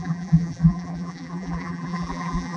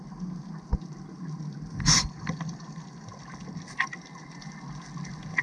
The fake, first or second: first